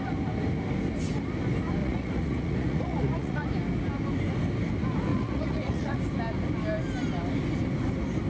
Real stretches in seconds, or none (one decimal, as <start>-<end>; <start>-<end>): 0.0-1.8; 3.5-5.1; 6.0-8.3